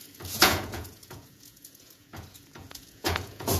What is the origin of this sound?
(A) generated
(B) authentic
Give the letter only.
A